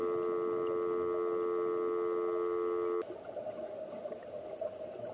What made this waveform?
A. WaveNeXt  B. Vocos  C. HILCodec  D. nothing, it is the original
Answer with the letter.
D